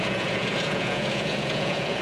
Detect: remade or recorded remade